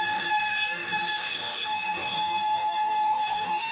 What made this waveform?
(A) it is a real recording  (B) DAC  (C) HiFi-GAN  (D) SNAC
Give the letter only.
B